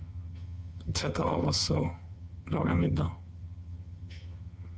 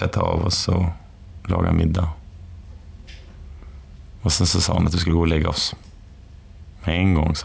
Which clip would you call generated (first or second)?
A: first